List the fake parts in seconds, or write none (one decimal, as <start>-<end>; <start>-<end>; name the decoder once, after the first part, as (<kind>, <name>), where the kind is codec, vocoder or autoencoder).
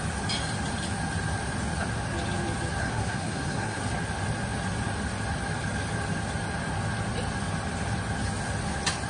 2.8-3.8 (codec, SNAC)